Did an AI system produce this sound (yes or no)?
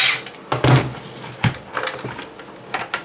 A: no